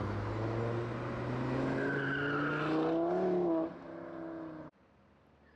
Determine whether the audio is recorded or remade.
recorded